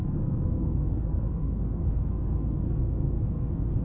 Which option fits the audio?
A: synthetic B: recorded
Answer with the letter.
A